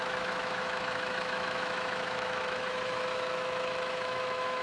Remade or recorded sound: remade